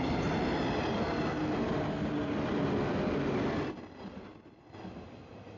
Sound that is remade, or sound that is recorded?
recorded